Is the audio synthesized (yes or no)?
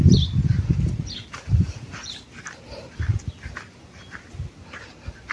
no